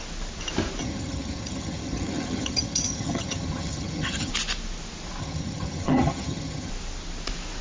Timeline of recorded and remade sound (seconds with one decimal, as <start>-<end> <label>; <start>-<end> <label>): 0.0-0.8 recorded; 0.8-4.3 remade; 4.3-5.2 recorded; 5.2-6.7 remade; 6.7-7.6 recorded

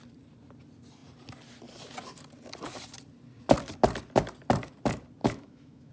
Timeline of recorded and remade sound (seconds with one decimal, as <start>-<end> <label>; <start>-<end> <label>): 0.0-5.2 recorded; 5.2-5.9 remade